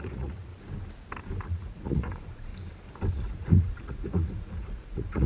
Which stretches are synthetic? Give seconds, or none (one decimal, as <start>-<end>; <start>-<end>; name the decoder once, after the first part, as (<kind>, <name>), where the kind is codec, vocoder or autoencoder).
0.0-0.5 (vocoder, Vocos); 1.4-2.5; 3.1-5.3